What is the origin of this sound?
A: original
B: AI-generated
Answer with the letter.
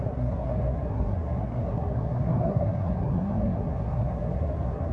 B